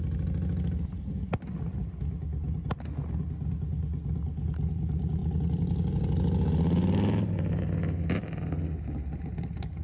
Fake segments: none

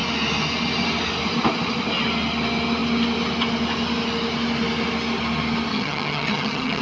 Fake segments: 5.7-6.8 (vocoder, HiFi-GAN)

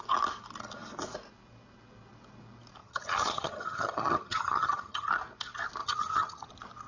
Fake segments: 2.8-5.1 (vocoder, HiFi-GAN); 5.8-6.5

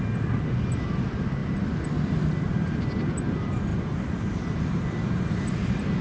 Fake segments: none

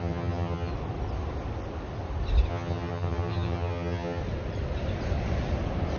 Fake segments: 0.0-0.7 (vocoder, HiFi-GAN); 2.5-4.2

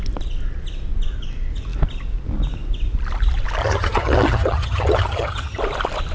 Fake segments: 3.6-5.6 (vocoder, HiFi-GAN)

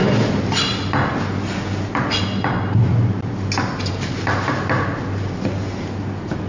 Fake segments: none